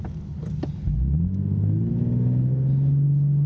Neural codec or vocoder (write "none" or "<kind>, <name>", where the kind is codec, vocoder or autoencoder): none